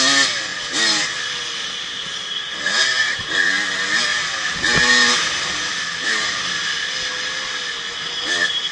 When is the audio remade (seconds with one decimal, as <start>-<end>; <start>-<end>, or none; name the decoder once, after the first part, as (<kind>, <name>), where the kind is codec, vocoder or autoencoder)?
none